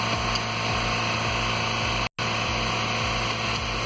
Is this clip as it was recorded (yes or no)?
yes